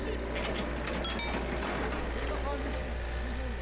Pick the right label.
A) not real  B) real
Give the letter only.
B